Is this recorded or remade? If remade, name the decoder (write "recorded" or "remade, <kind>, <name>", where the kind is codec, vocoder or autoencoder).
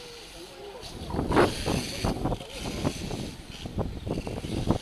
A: recorded